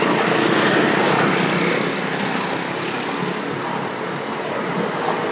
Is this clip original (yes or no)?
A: yes